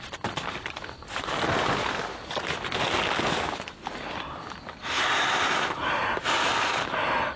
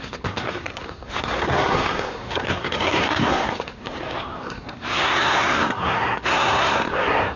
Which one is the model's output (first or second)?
second